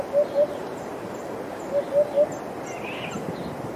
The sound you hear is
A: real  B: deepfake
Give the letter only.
A